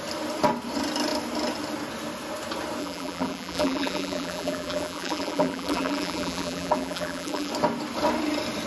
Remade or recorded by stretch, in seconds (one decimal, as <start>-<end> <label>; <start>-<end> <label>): 0.0-2.8 recorded; 2.8-7.5 remade; 7.5-8.7 recorded